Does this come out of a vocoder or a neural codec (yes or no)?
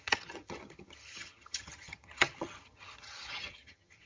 yes